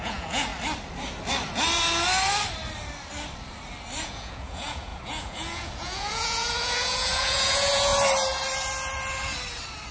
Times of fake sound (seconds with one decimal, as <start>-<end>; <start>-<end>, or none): 0.0-0.5; 4.0-7.9